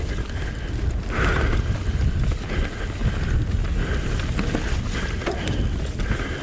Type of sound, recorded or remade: recorded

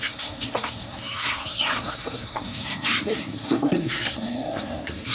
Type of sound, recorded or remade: remade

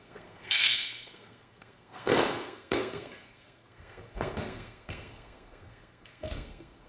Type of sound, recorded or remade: remade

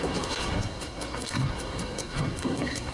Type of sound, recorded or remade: remade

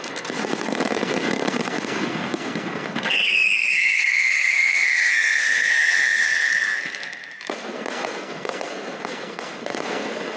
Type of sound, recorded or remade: remade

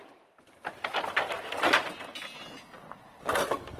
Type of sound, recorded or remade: recorded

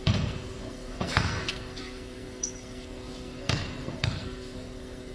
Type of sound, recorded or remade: remade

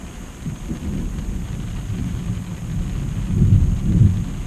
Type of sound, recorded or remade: recorded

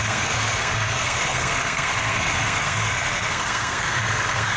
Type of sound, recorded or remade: remade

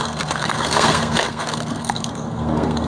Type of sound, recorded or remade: remade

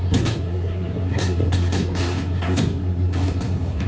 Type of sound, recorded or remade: remade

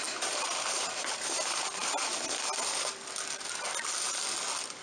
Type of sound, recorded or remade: recorded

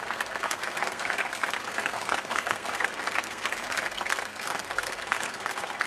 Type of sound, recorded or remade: remade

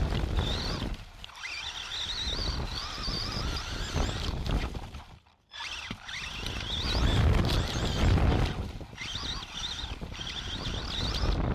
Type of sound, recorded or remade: recorded